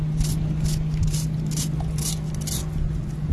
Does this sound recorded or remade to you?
recorded